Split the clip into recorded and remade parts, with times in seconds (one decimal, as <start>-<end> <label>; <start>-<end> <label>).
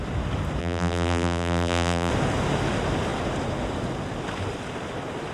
0.0-0.6 recorded; 0.6-2.1 remade; 2.1-5.3 recorded